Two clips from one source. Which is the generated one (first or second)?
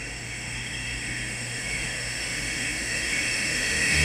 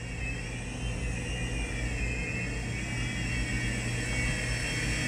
first